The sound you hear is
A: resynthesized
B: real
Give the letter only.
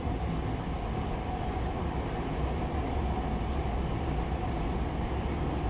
B